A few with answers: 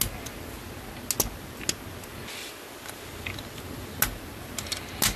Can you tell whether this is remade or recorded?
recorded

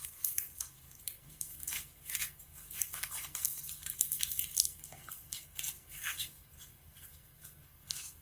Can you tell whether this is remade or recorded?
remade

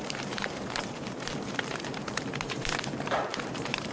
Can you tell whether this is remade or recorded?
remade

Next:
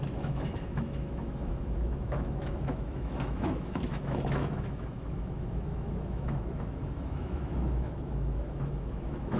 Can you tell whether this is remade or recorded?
remade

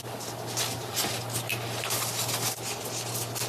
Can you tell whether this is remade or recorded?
recorded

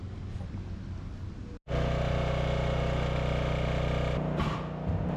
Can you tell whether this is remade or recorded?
recorded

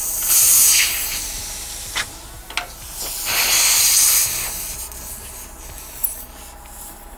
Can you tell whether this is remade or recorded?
recorded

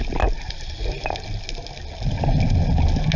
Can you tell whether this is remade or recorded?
recorded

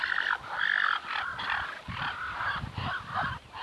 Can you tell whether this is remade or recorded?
recorded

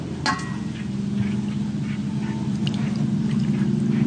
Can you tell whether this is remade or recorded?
recorded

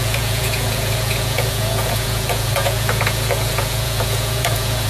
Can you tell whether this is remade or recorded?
remade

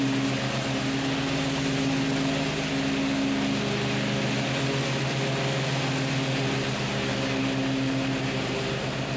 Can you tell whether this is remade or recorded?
recorded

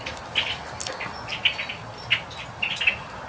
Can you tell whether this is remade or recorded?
recorded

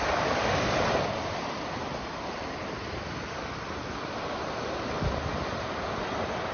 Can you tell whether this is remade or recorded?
remade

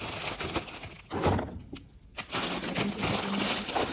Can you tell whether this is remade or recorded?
recorded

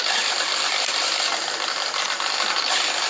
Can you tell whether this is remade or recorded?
recorded